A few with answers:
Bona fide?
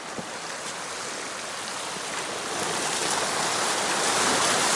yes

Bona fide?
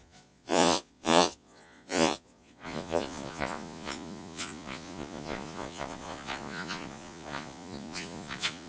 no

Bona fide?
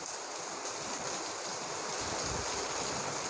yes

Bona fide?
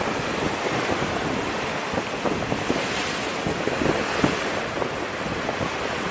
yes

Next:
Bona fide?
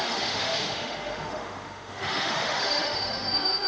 no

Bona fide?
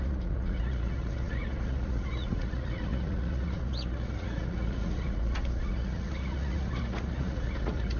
no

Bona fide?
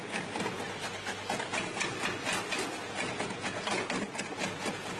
yes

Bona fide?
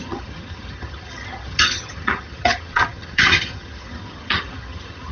no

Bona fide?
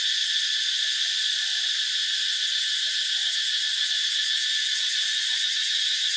yes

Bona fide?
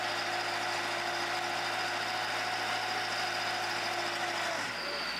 yes